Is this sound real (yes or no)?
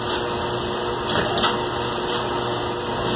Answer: yes